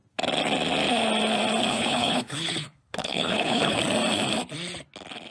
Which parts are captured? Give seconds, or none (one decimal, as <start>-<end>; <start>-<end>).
0.0-1.7; 3.8-5.3